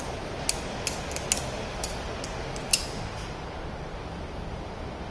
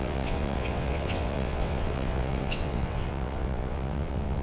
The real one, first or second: first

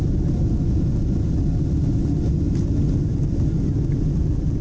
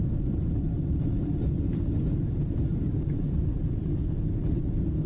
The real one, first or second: first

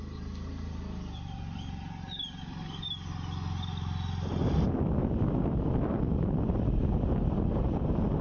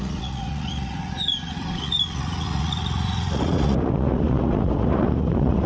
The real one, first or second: first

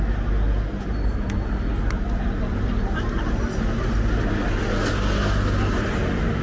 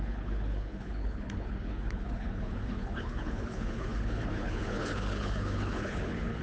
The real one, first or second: first